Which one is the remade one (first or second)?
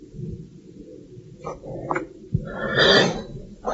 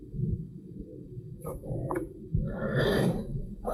second